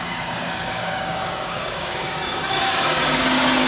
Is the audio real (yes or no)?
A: no